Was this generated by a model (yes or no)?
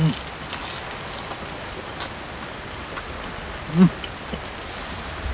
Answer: no